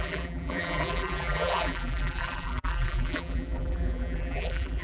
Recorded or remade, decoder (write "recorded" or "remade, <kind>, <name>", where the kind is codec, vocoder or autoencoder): remade, vocoder, BigVGAN v2